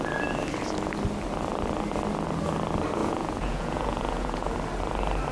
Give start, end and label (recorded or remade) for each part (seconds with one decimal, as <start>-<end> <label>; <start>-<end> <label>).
0.0-3.0 recorded; 3.0-4.5 remade; 4.5-5.3 recorded